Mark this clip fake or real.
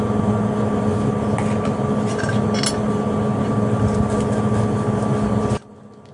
real